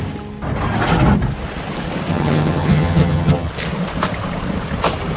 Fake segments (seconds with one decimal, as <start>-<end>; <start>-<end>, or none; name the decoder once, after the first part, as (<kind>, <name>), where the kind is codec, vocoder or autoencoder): 2.1-3.5 (vocoder, HiFi-GAN)